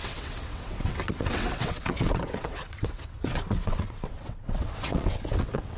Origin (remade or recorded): remade